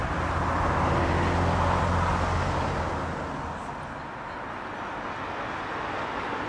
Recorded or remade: recorded